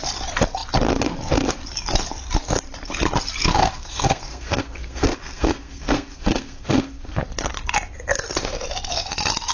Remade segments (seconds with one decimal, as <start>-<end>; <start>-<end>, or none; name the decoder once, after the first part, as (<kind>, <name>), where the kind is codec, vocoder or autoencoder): 3.6-7.2 (codec, SNAC)

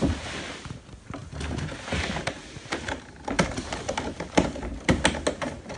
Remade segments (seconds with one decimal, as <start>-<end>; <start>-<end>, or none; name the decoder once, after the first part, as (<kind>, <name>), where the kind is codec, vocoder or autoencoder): none

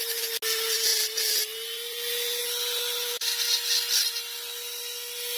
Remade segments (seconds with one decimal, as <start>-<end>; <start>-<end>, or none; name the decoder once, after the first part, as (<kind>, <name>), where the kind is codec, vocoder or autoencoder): none

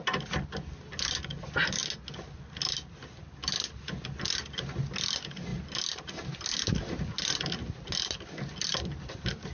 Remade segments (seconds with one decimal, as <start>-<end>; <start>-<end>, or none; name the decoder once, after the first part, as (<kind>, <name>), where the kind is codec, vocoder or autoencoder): none

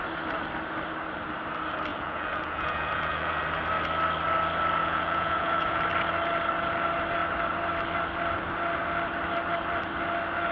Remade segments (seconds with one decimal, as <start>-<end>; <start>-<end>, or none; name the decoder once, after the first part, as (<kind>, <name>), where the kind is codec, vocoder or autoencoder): 1.9-3.4 (vocoder, Vocos); 4.8-5.8